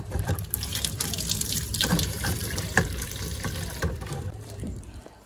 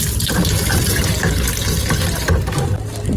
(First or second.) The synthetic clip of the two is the first